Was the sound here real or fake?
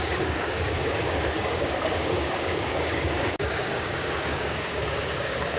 fake